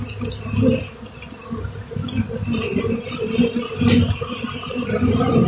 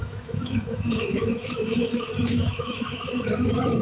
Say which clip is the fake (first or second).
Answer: second